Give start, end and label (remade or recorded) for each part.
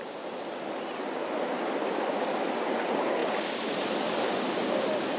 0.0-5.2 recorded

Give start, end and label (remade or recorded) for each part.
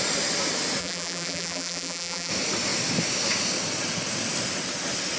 0.0-0.8 recorded; 0.8-2.3 remade; 2.3-5.2 recorded